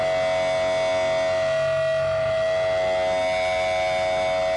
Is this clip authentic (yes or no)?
yes